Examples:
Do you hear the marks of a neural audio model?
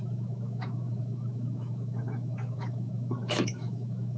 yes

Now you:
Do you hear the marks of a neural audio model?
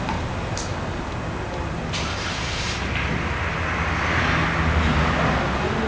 no